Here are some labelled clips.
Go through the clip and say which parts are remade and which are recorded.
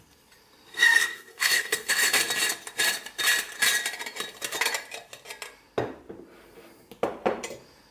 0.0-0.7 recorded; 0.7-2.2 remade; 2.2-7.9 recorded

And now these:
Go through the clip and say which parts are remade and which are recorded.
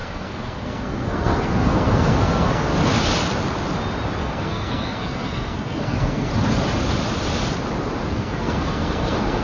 0.0-2.7 remade; 2.7-4.2 recorded; 4.2-6.3 remade; 6.3-8.1 recorded; 8.1-9.4 remade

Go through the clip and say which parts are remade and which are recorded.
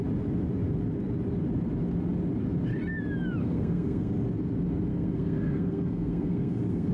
0.0-3.4 recorded; 3.4-4.1 remade; 4.1-4.9 recorded; 4.9-6.9 remade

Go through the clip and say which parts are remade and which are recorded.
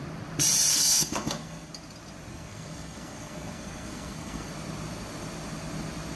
0.0-0.7 recorded; 0.7-1.7 remade; 1.7-2.3 recorded; 2.3-4.5 remade; 4.5-6.2 recorded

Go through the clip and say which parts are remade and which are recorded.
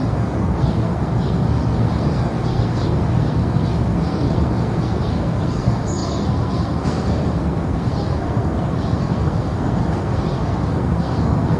0.0-11.6 remade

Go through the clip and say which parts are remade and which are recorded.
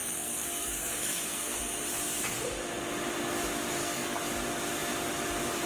0.0-1.6 remade; 1.6-3.7 recorded; 3.7-4.2 remade; 4.2-5.7 recorded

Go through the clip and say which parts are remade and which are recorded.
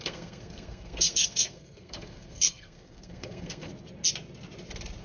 0.0-3.7 remade; 3.7-5.0 recorded